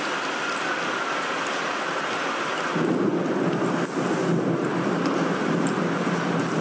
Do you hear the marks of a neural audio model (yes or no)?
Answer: no